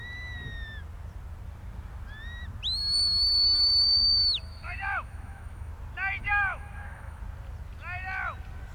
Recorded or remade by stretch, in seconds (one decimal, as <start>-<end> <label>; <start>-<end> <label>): 0.0-2.8 recorded; 2.8-5.7 remade; 5.7-6.2 recorded; 6.2-7.2 remade; 7.2-8.7 recorded